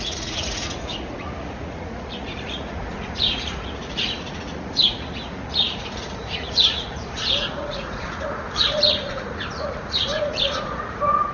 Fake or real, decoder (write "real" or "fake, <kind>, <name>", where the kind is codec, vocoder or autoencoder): fake, vocoder, Vocos